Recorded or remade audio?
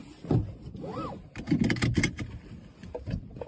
recorded